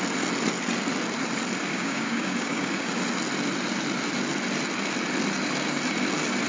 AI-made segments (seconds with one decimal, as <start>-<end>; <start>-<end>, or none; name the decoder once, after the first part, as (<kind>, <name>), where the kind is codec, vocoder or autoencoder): 1.7-2.9 (codec, DAC)